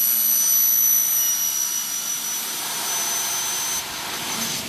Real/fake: real